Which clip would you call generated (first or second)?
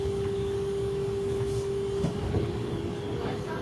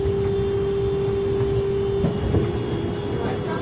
first